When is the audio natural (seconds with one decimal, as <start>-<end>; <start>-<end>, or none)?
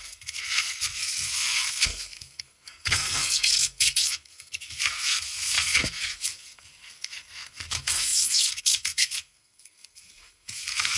none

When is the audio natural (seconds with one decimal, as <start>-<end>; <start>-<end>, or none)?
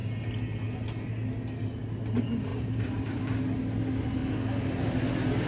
0.0-2.5; 3.2-5.5